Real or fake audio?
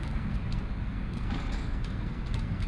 fake